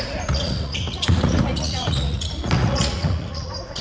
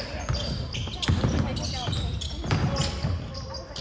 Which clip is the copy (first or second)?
first